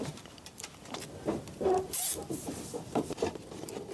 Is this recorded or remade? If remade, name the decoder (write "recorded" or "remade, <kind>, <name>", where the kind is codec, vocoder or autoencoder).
remade, vocoder, BigVGAN v2